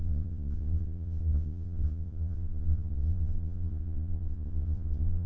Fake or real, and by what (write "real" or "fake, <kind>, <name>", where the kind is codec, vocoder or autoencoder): fake, vocoder, Vocos